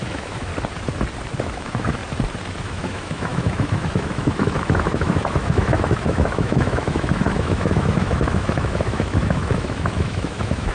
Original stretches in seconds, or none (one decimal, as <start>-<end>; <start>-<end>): 0.5-1.4; 2.0-2.6